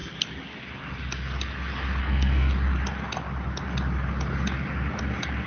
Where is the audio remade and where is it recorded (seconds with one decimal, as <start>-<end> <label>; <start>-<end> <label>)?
0.0-2.0 recorded; 2.0-2.5 remade; 2.5-5.5 recorded